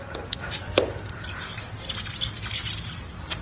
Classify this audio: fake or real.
real